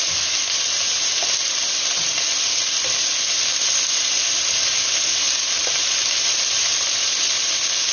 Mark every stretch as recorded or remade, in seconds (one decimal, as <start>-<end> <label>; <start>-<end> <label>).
0.0-7.9 recorded